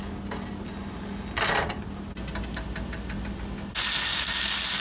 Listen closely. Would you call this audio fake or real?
real